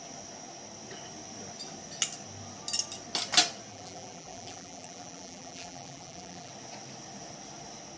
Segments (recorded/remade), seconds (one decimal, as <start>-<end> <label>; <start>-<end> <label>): 0.0-3.7 recorded; 3.7-6.5 remade; 6.5-8.0 recorded